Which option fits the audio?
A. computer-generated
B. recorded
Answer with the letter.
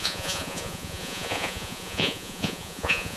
A